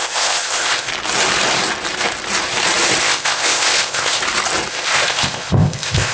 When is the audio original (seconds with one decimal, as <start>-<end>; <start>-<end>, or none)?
0.9-3.0; 4.2-4.7